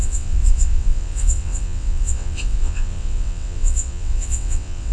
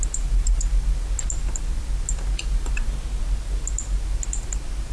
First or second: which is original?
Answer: second